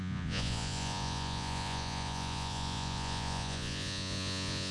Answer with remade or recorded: remade